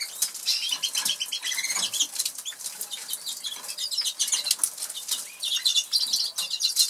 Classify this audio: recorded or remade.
recorded